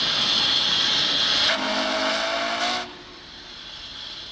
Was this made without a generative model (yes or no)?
yes